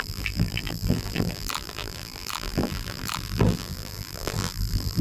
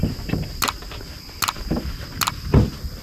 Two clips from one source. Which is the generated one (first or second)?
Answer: first